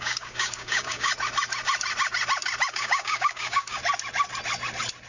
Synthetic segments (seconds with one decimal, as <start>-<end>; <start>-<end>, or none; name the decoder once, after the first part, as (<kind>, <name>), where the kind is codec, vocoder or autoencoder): 0.0-1.1 (codec, DAC); 2.7-3.8